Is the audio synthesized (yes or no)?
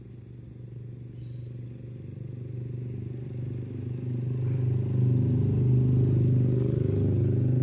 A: no